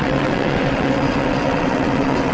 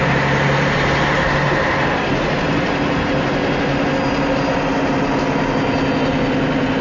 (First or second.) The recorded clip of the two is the second